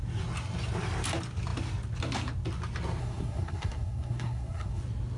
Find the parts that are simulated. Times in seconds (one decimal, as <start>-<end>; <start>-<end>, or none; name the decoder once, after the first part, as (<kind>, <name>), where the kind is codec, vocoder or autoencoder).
3.0-4.8 (codec, SNAC)